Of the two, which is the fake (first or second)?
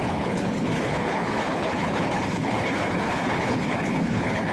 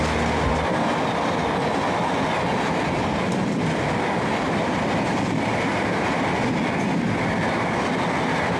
first